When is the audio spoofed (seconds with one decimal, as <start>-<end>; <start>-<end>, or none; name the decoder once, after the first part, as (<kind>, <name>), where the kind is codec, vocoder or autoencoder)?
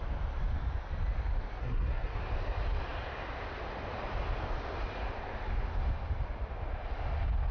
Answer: 1.6-2.2 (codec, SNAC)